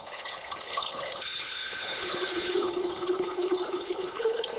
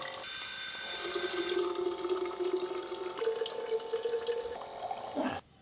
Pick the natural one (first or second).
second